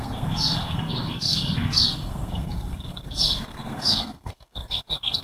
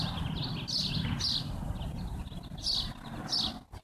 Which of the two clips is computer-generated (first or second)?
first